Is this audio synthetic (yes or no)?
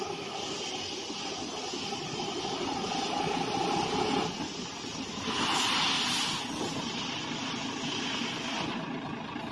no